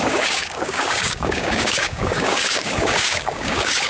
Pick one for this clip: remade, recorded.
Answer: remade